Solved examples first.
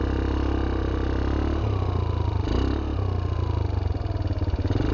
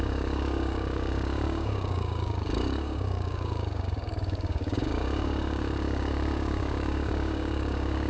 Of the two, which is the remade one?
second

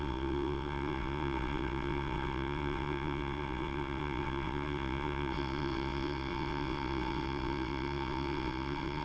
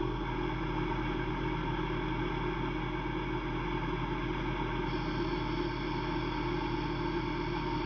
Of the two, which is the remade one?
first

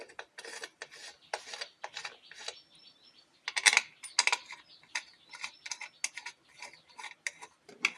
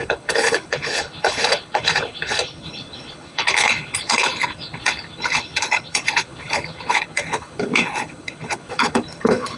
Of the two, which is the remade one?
second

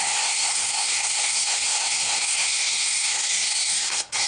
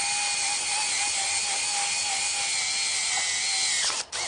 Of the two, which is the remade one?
first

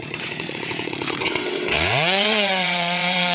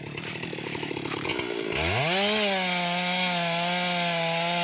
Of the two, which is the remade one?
first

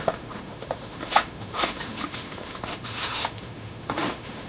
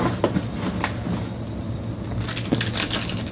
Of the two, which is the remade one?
first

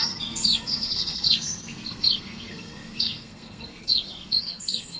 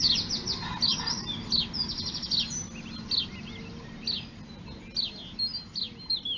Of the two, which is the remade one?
first